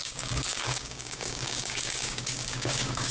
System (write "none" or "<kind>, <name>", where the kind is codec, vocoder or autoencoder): codec, DAC